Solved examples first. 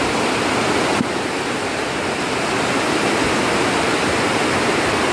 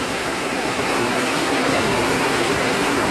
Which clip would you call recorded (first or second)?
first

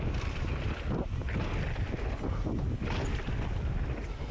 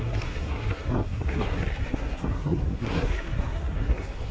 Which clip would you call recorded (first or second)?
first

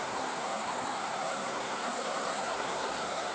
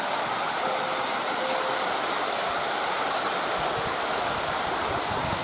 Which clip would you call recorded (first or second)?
second